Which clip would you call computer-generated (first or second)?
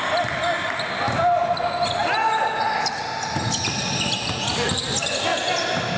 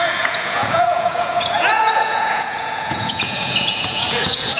second